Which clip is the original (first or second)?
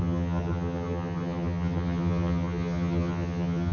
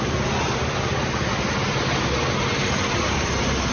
second